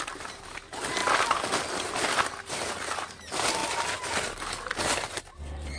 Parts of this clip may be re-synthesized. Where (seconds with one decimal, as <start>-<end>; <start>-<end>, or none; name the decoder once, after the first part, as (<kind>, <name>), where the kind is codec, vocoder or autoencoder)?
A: none